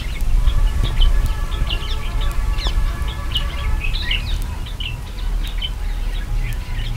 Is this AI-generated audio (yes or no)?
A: no